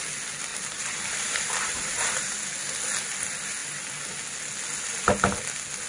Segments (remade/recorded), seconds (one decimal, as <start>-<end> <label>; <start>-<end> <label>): 0.0-0.5 recorded; 0.5-2.4 remade; 2.4-5.9 recorded